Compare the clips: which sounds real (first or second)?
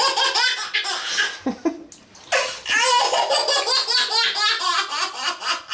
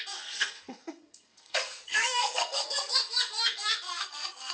first